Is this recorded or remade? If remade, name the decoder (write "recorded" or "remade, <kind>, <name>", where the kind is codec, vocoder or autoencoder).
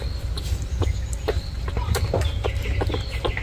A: recorded